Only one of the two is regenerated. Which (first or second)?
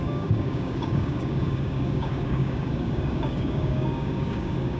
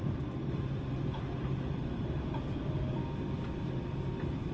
first